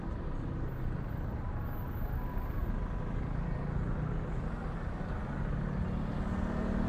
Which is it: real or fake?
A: real